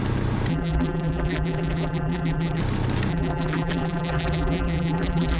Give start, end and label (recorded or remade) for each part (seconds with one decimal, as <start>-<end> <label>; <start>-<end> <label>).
0.0-0.5 recorded; 0.5-2.6 remade; 2.6-3.1 recorded; 3.1-5.4 remade